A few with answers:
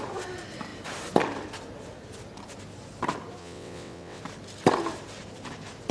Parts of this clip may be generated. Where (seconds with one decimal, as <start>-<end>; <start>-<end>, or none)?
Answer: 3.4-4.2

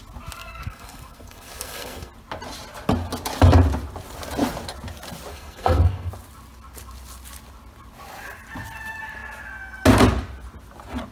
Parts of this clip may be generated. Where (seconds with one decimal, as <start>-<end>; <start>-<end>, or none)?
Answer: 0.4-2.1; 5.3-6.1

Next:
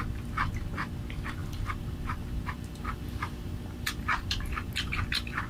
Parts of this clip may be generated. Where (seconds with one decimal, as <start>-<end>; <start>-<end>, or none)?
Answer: 1.4-4.7